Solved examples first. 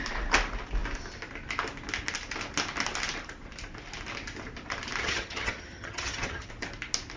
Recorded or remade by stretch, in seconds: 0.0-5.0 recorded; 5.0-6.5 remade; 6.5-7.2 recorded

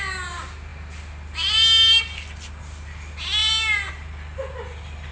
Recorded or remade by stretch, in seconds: 0.0-5.1 recorded

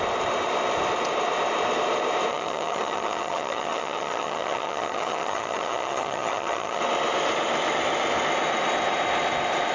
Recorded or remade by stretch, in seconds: 0.0-2.3 recorded; 2.3-6.8 remade; 6.8-9.7 recorded

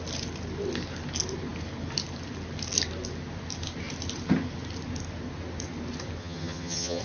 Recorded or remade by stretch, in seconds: 0.0-6.2 recorded; 6.2-7.0 remade

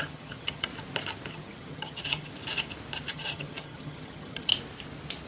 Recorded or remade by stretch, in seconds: 0.0-0.7 remade; 0.7-1.3 recorded; 1.3-2.3 remade; 2.3-3.1 recorded; 3.1-4.5 remade; 4.5-5.3 recorded

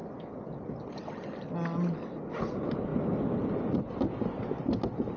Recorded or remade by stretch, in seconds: 0.0-5.2 recorded

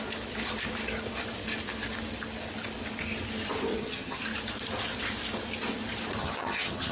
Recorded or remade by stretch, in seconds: 0.0-3.7 recorded; 3.7-4.2 remade; 4.2-6.2 recorded; 6.2-6.9 remade

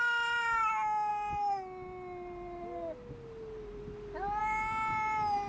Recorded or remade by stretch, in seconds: 0.0-5.5 recorded